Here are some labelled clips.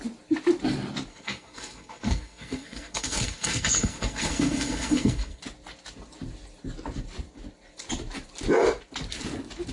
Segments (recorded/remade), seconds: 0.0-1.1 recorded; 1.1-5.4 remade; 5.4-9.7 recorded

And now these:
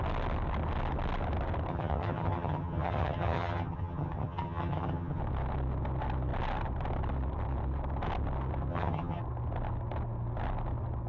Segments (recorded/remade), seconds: 0.0-1.7 recorded; 1.7-5.2 remade; 5.2-8.7 recorded; 8.7-9.2 remade; 9.2-11.1 recorded

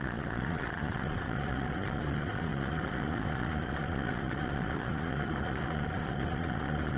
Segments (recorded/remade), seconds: 0.0-7.0 remade

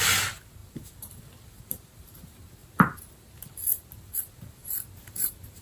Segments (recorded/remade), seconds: 0.0-0.6 recorded; 0.6-1.2 remade; 1.2-4.6 recorded; 4.6-5.6 remade

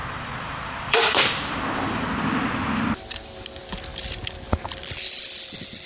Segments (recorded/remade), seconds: 0.0-2.1 remade; 2.1-5.9 recorded

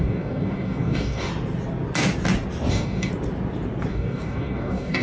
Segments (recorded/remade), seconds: 0.0-1.3 remade; 1.3-2.7 recorded; 2.7-3.1 remade; 3.1-3.9 recorded; 3.9-5.0 remade

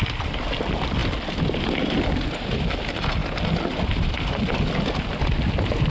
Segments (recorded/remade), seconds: 0.0-5.9 recorded

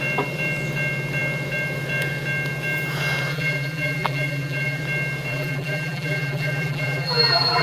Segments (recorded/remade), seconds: 0.0-3.3 recorded; 3.3-4.8 remade; 4.8-5.3 recorded; 5.3-7.6 remade